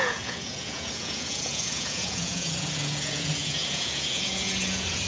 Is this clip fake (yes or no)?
yes